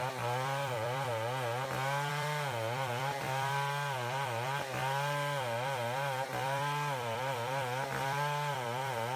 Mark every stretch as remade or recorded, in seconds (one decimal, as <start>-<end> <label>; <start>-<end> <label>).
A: 0.0-1.1 remade; 1.1-2.1 recorded; 2.1-9.2 remade